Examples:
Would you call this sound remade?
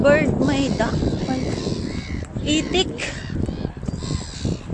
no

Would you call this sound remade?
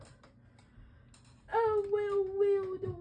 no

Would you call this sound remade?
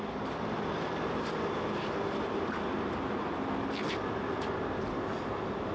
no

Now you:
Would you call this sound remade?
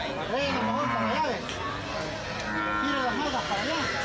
no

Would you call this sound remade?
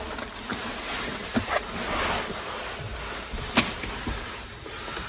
no